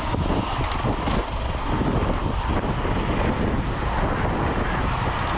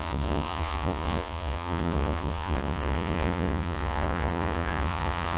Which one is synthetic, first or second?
second